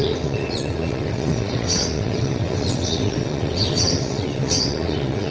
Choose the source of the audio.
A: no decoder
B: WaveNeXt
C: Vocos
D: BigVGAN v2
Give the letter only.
B